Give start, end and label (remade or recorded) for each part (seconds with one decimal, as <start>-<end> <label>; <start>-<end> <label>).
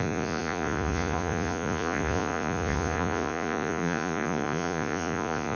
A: 0.0-5.6 remade